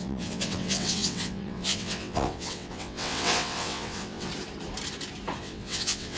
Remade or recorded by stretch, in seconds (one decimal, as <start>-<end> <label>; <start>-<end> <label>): 0.0-4.3 remade; 4.3-5.4 recorded; 5.4-6.2 remade